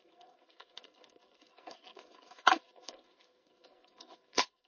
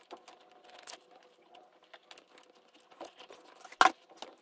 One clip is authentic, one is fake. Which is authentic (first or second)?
second